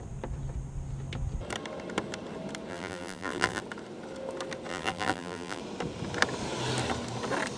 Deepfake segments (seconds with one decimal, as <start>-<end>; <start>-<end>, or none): 2.7-3.6; 4.7-5.6